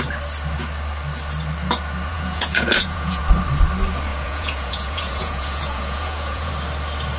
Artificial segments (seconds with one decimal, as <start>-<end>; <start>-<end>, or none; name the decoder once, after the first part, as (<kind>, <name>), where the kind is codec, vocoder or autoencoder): 2.1-3.2 (vocoder, Vocos); 4.1-6.5